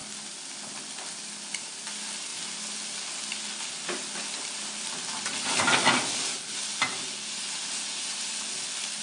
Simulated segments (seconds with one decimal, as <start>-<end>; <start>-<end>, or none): none